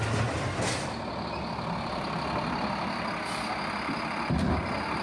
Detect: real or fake real